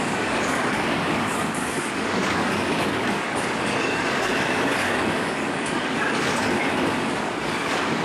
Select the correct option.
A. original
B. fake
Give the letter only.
B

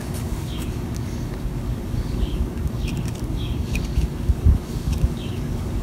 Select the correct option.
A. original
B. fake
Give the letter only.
B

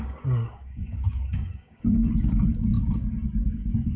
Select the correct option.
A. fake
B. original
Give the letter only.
A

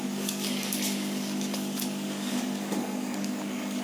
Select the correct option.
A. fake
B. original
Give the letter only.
A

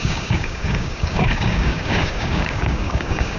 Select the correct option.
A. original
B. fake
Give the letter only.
B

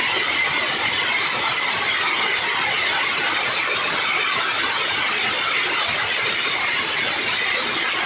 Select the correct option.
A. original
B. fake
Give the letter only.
A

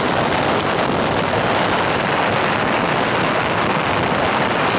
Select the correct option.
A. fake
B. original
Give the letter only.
B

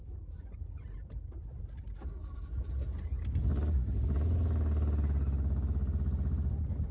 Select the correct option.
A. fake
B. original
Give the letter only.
B